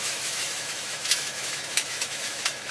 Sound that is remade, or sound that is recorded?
remade